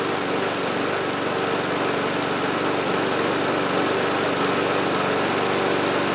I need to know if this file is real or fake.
real